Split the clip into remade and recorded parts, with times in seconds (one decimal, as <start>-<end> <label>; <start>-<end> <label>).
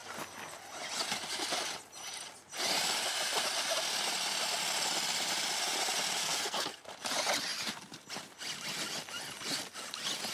0.0-6.2 recorded; 6.2-6.8 remade; 6.8-10.3 recorded